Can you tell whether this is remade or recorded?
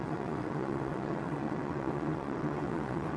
remade